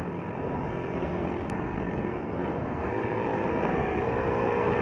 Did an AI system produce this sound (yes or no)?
yes